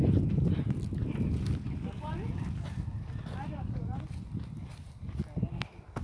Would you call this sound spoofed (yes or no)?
no